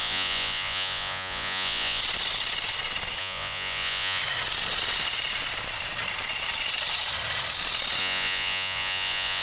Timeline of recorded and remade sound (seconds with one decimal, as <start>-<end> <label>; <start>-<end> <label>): 0.0-2.0 remade; 2.0-3.2 recorded; 3.2-4.2 remade; 4.2-8.0 recorded; 8.0-9.4 remade